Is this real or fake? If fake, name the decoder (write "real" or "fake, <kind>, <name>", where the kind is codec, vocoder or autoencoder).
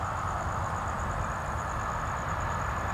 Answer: real